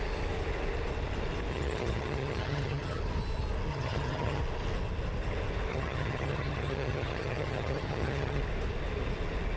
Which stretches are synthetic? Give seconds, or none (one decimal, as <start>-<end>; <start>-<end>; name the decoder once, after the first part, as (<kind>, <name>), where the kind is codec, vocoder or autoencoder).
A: 1.5-3.0 (vocoder, HiFi-GAN); 3.7-4.4; 5.7-8.4